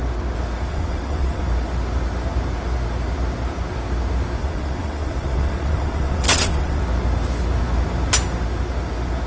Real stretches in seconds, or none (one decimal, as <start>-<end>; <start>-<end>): 0.0-0.7; 1.4-4.4; 6.8-9.3